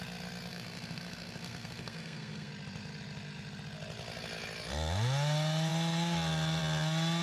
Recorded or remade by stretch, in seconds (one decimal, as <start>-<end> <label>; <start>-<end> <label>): 0.0-0.5 recorded; 0.5-2.5 remade; 2.5-7.2 recorded